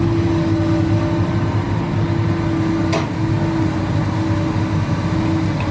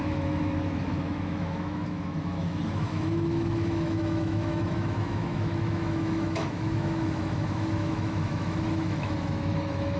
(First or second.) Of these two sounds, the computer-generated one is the second